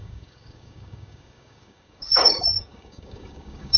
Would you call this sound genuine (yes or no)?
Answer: no